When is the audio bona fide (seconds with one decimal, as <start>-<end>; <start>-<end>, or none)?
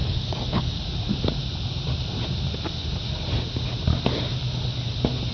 0.8-5.3